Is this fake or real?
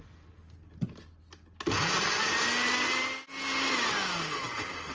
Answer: real